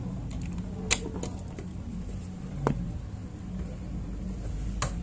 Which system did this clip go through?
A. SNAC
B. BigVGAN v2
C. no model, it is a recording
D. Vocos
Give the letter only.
C